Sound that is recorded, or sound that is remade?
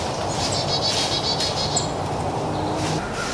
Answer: recorded